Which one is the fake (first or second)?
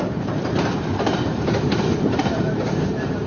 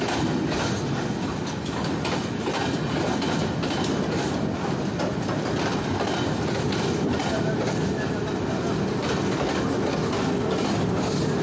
first